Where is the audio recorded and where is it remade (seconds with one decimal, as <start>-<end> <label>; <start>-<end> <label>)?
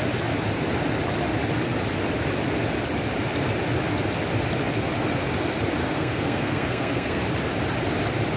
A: 0.0-5.8 recorded; 5.8-7.2 remade; 7.2-8.4 recorded